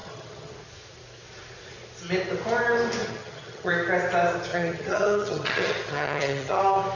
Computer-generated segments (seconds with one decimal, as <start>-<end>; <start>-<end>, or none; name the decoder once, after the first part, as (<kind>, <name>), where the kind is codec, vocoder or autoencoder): 0.0-0.5 (vocoder, HiFi-GAN); 3.0-3.7; 4.5-6.6